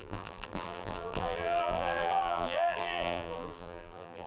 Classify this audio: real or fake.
fake